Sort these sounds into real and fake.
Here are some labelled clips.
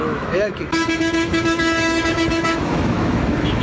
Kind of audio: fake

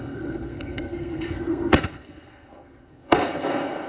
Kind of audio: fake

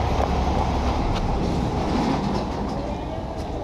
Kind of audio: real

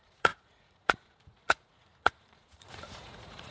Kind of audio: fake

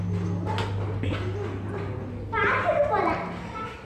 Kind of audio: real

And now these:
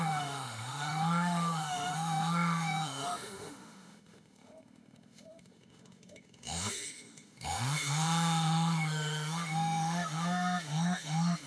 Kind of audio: fake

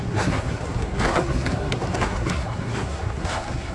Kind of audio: fake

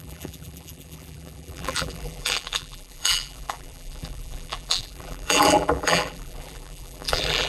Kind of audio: fake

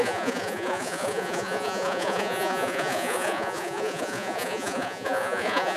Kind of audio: fake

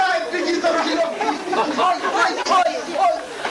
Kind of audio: real